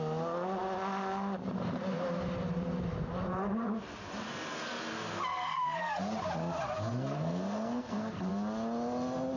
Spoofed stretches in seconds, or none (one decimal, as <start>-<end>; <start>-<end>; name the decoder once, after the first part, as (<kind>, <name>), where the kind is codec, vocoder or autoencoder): 5.3-6.0 (codec, SNAC); 6.9-8.3